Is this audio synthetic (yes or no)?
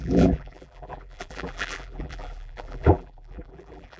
yes